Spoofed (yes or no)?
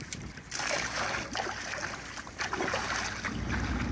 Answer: no